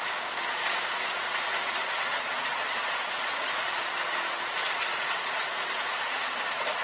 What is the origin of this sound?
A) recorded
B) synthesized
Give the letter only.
B